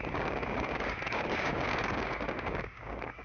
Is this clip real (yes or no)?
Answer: no